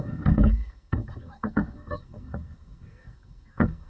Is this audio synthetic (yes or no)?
yes